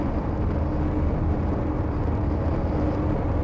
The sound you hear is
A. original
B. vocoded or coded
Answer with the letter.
A